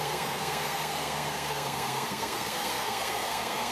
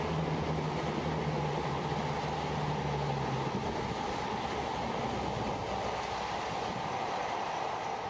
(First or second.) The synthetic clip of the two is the first